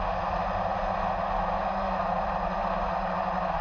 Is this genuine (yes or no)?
yes